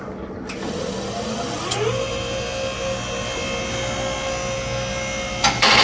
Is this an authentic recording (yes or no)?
yes